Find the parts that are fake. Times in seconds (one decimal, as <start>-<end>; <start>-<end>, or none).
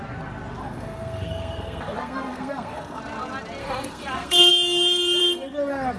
0.6-3.0; 3.6-4.5; 5.2-6.0